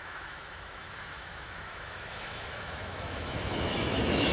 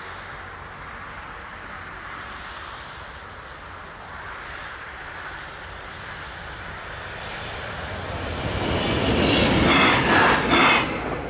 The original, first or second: second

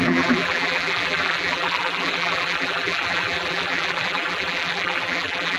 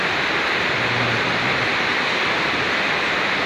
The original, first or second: second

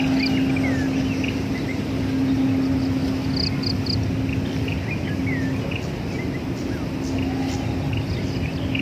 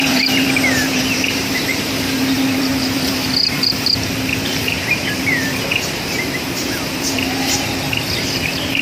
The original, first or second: first